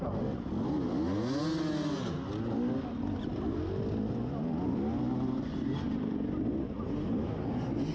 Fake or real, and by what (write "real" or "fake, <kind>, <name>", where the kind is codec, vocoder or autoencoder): real